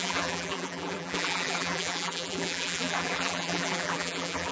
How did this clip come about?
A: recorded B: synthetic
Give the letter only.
B